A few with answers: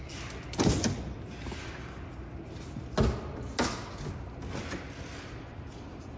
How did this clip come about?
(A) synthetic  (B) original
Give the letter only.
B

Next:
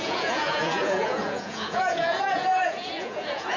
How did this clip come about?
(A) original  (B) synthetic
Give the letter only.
B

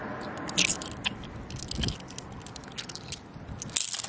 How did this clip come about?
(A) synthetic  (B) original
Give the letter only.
B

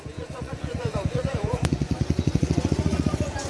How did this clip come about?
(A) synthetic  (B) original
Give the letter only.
A